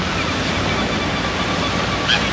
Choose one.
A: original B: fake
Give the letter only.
A